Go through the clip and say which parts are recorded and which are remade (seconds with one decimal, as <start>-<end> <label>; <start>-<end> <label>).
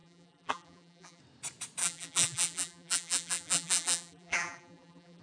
0.0-1.2 remade; 1.2-1.8 recorded; 1.8-5.2 remade